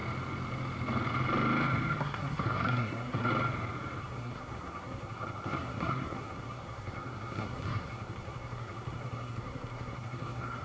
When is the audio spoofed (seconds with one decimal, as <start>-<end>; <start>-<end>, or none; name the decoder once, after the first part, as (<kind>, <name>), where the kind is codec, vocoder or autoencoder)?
2.0-3.3 (codec, SNAC); 4.0-10.6